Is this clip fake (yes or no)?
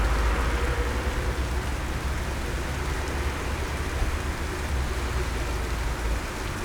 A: no